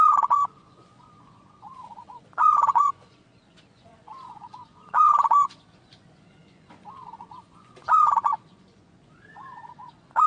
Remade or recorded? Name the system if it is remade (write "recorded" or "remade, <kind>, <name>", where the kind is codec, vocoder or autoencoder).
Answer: remade, vocoder, Vocos